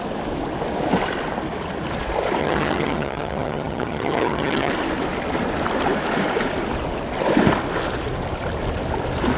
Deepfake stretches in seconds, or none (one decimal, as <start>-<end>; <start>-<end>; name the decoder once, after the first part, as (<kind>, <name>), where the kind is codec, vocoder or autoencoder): 2.4-4.7 (vocoder, HiFi-GAN)